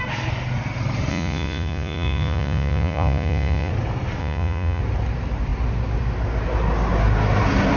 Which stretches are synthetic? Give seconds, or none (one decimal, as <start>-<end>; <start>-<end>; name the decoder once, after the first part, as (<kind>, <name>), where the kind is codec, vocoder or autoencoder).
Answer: 1.1-3.7 (vocoder, Vocos); 4.2-4.8